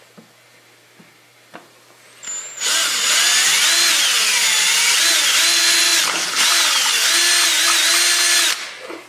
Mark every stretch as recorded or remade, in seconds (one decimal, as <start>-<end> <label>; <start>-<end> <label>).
0.0-5.9 recorded; 5.9-7.1 remade; 7.1-9.1 recorded